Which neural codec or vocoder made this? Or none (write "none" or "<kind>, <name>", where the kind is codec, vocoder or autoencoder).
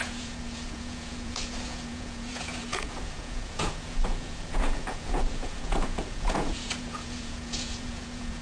vocoder, Vocos